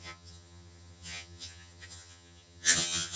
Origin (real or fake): fake